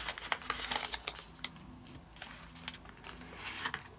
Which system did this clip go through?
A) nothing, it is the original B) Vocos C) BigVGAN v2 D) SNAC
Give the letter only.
A